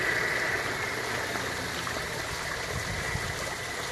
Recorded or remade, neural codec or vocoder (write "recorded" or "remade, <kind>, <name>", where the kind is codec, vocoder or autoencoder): recorded